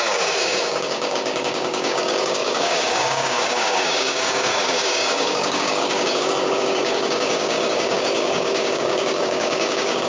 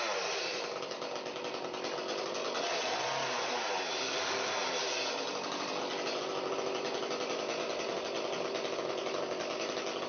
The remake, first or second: first